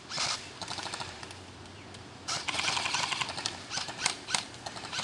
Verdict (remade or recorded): remade